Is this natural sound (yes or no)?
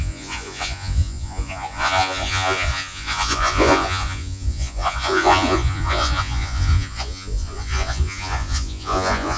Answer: no